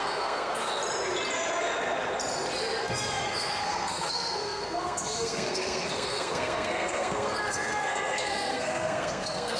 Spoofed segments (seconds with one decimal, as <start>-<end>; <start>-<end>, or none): 0.0-0.8; 2.8-9.6